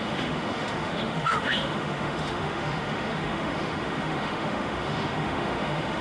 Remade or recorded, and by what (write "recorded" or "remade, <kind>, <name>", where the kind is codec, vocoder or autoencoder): remade, autoencoder, DAC-VAE